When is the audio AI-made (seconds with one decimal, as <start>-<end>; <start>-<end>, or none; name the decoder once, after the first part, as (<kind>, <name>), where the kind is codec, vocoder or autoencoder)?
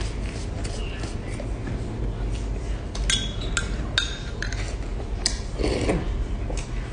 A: none